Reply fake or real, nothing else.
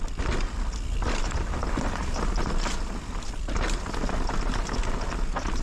real